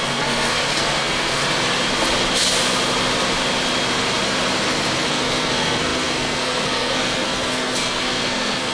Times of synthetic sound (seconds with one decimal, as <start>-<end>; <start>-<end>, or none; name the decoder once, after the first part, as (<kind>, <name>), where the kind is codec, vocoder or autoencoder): 0.0-1.4 (codec, SNAC); 5.1-8.7